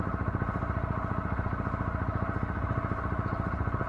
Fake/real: real